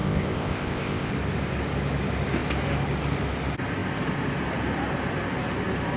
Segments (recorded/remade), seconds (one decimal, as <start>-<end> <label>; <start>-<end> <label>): 0.0-1.1 remade; 1.1-6.0 recorded

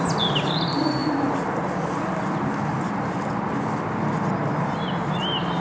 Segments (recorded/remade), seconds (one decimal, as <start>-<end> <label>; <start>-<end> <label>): 0.0-5.6 recorded

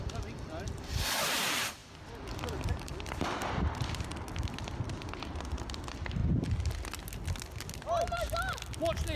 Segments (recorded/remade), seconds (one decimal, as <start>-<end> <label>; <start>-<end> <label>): 0.0-4.1 remade; 4.1-5.8 recorded; 5.8-6.2 remade; 6.2-9.2 recorded

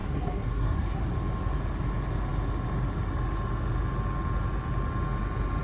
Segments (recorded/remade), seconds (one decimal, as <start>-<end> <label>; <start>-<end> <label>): 0.0-1.0 remade; 1.0-5.6 recorded

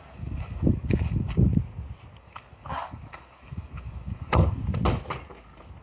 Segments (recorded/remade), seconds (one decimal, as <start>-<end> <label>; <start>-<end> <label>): 0.0-1.5 remade; 1.5-2.2 recorded; 2.2-4.6 remade; 4.6-5.8 recorded

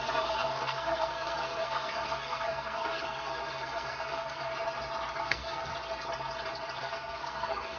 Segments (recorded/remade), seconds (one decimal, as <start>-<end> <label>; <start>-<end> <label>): 0.0-4.5 remade; 4.5-5.2 recorded; 5.2-5.7 remade; 5.7-6.8 recorded; 6.8-7.8 remade

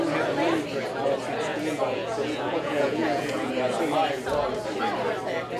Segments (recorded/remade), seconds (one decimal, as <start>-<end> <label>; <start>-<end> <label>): 0.0-1.5 recorded; 1.5-3.5 remade; 3.5-5.6 recorded

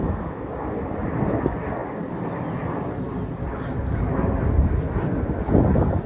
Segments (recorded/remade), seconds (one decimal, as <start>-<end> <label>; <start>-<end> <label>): 0.0-0.5 remade; 0.5-6.1 recorded